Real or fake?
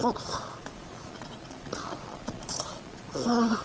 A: fake